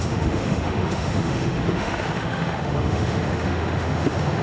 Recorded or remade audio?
remade